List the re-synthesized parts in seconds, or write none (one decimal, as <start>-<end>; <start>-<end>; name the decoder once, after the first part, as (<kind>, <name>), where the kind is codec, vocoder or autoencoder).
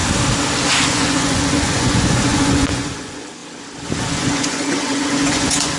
0.8-3.4 (vocoder, Vocos); 4.0-5.8